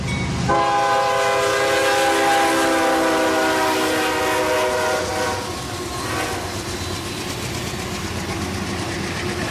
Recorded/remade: recorded